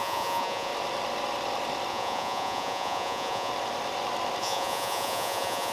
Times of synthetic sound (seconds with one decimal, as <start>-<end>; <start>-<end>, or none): 0.0-0.7; 1.9-3.5; 4.4-5.7